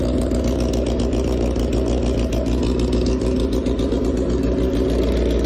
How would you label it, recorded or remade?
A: recorded